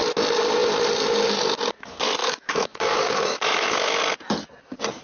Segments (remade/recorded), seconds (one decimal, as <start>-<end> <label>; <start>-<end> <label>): 0.0-2.2 recorded; 2.2-4.0 remade; 4.0-5.0 recorded